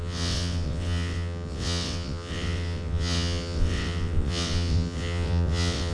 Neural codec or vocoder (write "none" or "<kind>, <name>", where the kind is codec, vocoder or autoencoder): vocoder, WaveNeXt